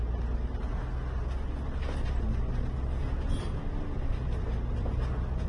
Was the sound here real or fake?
real